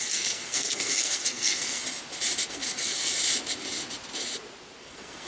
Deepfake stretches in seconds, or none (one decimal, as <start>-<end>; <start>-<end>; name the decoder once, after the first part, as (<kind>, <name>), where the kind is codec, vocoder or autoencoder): 0.0-1.8 (codec, SNAC); 2.5-3.1; 4.8-5.3